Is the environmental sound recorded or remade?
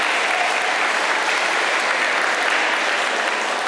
recorded